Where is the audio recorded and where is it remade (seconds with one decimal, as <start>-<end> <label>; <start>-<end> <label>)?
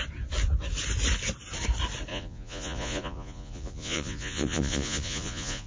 0.0-2.1 recorded; 2.1-5.7 remade